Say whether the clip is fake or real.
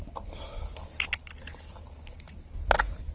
real